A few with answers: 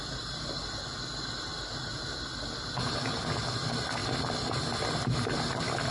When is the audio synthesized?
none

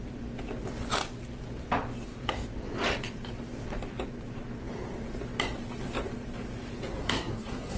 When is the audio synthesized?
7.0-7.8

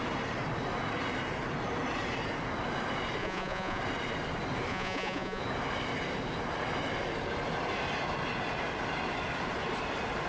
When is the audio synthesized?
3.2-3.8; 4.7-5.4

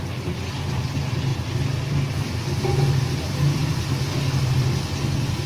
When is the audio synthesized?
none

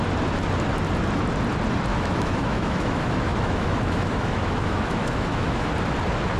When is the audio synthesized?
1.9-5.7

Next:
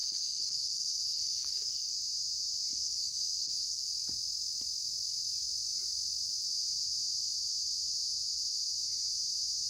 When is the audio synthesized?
0.0-1.9; 2.7-3.9

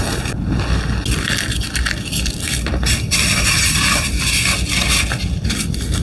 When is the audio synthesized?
2.5-4.2

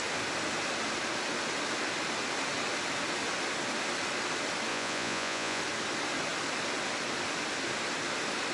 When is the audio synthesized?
4.7-5.6